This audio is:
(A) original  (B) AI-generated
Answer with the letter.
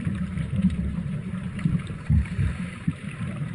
B